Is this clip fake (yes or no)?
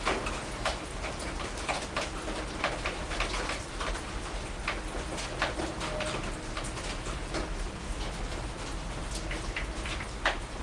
no